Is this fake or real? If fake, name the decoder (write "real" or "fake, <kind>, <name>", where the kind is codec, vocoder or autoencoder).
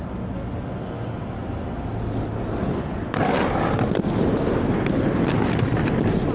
real